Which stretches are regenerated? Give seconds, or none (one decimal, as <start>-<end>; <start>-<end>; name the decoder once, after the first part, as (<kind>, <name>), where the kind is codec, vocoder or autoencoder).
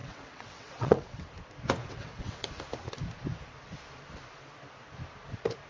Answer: 0.0-1.2 (vocoder, WaveNeXt); 1.8-2.5